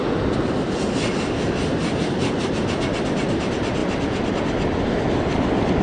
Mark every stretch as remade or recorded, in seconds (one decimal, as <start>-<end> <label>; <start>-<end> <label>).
0.0-5.8 recorded